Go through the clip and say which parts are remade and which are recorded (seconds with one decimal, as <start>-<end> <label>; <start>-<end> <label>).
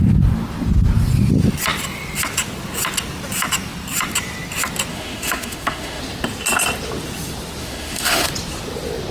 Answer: 0.0-4.9 recorded; 4.9-6.0 remade; 6.0-7.6 recorded; 7.6-8.3 remade; 8.3-9.1 recorded